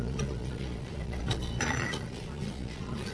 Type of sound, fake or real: fake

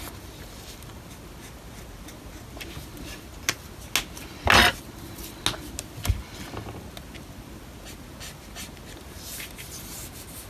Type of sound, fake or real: real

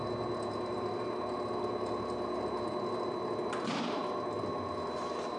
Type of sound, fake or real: real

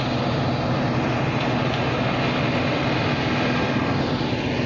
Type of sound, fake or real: real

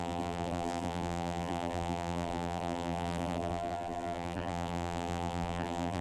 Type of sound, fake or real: fake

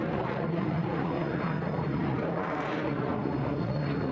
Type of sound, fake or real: fake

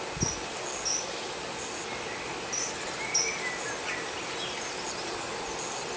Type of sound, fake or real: real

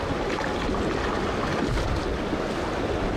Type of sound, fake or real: real